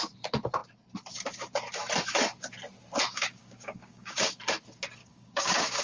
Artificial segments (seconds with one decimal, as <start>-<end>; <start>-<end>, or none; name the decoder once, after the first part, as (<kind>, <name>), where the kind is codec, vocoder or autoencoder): 3.1-4.4 (codec, DAC); 5.0-5.8